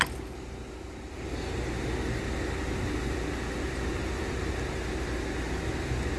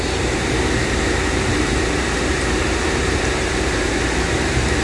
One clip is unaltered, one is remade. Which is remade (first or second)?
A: second